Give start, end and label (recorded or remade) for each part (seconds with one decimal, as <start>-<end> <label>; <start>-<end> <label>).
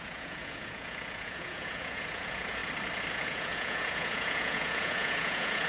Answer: 0.0-2.6 remade; 2.6-3.1 recorded; 3.1-5.7 remade